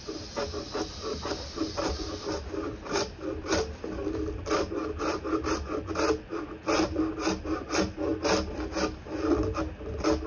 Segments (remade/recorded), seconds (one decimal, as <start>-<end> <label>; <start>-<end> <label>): 0.0-10.3 recorded

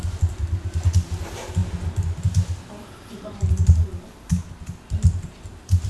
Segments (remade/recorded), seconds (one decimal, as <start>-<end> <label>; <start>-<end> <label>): 0.0-5.9 recorded

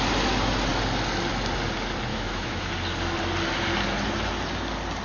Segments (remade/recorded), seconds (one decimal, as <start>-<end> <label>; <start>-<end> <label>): 0.0-2.1 recorded; 2.1-2.7 remade; 2.7-5.0 recorded

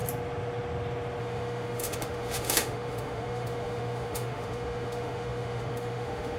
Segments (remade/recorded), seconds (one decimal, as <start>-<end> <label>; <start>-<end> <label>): 0.0-1.2 recorded; 1.2-6.4 remade

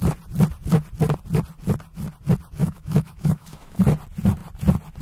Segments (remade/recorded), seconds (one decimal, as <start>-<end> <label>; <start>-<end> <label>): 0.0-2.6 recorded; 2.6-3.8 remade; 3.8-5.0 recorded

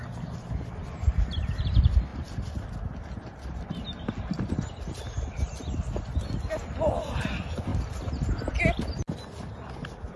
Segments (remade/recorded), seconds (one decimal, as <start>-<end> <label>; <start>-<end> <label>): 0.0-10.2 recorded

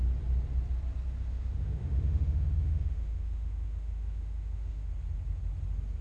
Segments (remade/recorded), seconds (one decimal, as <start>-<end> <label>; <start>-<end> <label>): 0.0-1.3 recorded; 1.3-4.9 remade; 4.9-6.0 recorded